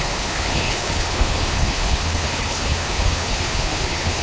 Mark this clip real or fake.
fake